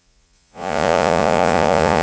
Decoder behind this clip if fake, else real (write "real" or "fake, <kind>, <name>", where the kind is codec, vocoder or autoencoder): fake, vocoder, Vocos